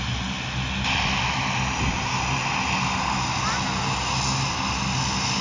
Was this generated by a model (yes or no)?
no